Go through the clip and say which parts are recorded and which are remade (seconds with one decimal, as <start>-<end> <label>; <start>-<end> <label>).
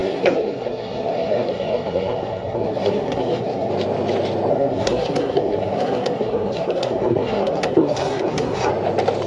0.0-3.7 remade; 3.7-4.5 recorded; 4.5-8.7 remade; 8.7-9.3 recorded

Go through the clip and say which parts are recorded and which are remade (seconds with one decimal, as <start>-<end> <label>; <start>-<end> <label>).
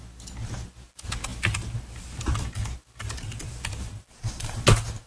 0.0-5.1 recorded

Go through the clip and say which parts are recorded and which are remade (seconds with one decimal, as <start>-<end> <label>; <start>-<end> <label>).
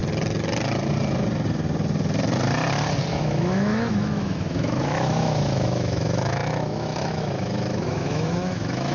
0.0-3.1 recorded; 3.1-8.9 remade